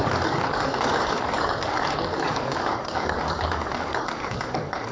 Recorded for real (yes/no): no